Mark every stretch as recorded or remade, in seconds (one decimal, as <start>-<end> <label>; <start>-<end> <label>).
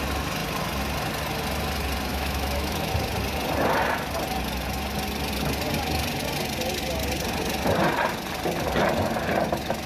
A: 0.0-2.1 recorded; 2.1-2.9 remade; 2.9-9.9 recorded